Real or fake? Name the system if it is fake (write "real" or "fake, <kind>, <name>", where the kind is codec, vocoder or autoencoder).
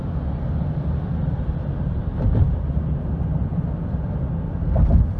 real